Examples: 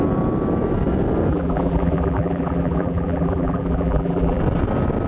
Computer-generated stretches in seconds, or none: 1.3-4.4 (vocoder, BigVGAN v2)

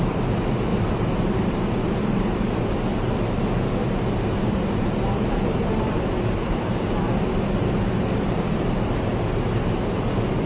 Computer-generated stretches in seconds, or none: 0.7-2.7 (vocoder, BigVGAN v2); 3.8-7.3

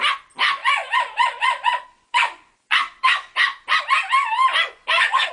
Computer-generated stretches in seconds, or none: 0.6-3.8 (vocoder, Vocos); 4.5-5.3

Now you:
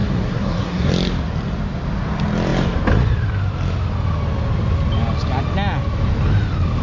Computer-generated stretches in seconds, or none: 0.0-0.9 (codec, SNAC)

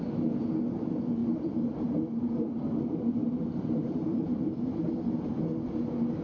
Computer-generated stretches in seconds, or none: 1.2-4.9 (vocoder, BigVGAN v2)

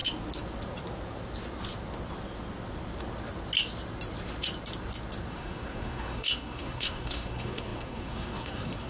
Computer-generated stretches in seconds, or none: 5.3-8.9 (codec, SNAC)

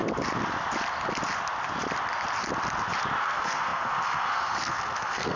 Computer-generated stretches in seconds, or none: 3.2-5.4 (codec, SNAC)

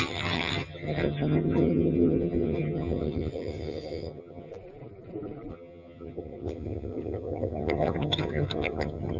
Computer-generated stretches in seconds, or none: 0.0-4.5 (vocoder, HiFi-GAN); 5.5-9.2